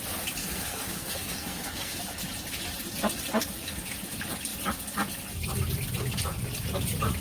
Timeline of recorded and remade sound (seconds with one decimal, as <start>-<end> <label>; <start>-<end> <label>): 0.0-0.4 recorded; 0.4-2.0 remade; 2.0-7.2 recorded